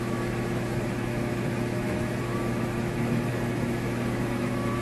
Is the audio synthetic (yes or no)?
yes